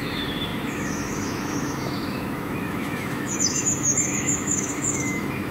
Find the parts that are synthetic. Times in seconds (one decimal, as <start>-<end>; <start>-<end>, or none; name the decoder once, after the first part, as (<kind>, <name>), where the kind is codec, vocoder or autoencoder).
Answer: 0.0-5.5 (autoencoder, DAC-VAE)